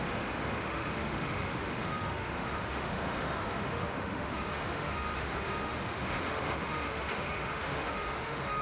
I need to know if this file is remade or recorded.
remade